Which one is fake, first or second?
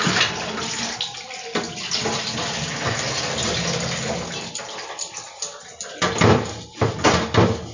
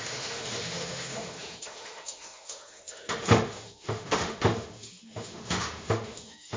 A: second